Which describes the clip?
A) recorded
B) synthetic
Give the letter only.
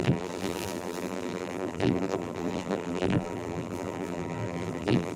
B